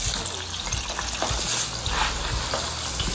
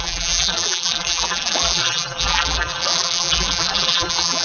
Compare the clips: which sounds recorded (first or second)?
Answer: first